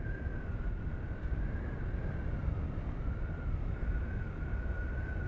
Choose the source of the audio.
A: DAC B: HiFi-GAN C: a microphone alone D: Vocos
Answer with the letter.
C